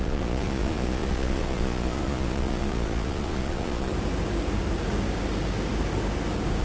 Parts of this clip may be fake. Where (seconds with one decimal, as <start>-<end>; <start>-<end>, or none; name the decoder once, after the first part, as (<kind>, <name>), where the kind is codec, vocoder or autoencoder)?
0.0-3.9 (vocoder, Vocos)